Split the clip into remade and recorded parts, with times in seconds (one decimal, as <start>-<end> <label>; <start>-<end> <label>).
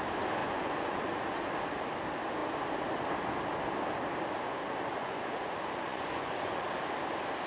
0.0-0.4 recorded; 0.4-1.5 remade; 1.5-5.0 recorded; 5.0-6.6 remade; 6.6-7.5 recorded